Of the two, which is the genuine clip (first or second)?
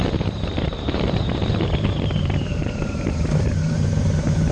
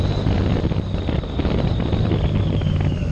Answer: second